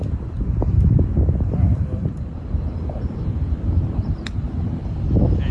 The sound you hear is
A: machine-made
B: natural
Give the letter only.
A